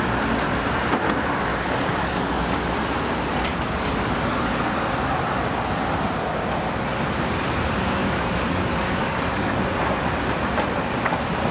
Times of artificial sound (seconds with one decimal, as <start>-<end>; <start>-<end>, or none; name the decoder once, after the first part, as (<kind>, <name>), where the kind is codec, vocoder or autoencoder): 1.5-2.6 (codec, DAC); 3.5-4.9; 8.0-9.6